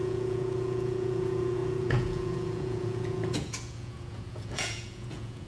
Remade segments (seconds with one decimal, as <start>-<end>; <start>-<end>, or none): 0.0-5.5